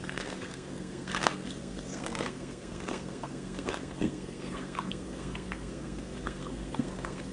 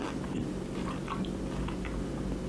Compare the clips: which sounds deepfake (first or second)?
first